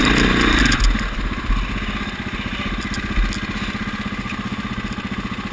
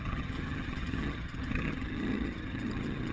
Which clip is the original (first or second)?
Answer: first